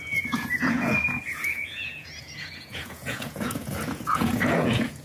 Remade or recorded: remade